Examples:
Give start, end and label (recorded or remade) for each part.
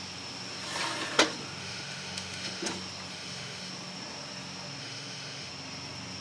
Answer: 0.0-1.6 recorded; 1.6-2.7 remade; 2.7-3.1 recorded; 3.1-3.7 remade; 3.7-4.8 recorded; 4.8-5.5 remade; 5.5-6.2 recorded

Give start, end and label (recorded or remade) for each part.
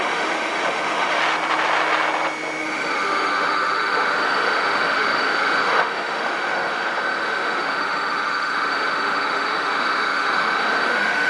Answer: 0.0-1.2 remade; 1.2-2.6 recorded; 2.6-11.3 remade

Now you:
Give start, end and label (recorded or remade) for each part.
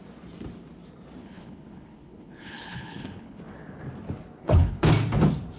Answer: 0.0-1.2 recorded; 1.2-3.4 remade; 3.4-4.4 recorded; 4.4-4.9 remade; 4.9-5.6 recorded